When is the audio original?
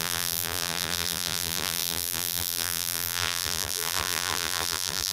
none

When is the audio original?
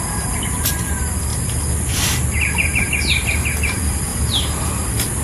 0.0-5.2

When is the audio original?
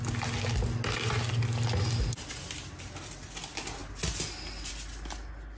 0.0-5.6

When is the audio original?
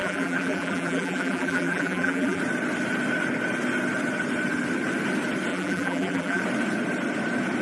2.4-5.5; 6.4-7.6